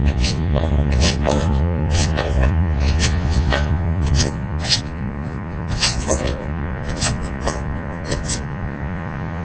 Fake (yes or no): yes